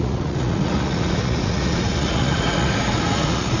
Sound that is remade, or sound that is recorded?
remade